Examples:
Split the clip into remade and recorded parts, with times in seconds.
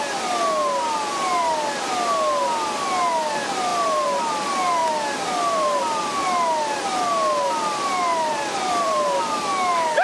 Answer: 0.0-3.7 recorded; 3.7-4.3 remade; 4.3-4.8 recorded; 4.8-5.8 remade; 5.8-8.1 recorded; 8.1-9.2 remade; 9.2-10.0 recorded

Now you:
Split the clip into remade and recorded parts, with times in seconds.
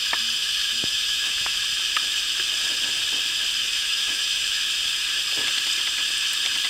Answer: 0.0-0.4 recorded; 0.4-1.6 remade; 1.6-3.6 recorded; 3.6-4.6 remade; 4.6-6.7 recorded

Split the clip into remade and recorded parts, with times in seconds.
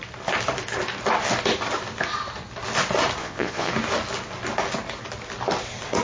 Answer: 0.0-3.2 recorded; 3.2-3.7 remade; 3.7-6.0 recorded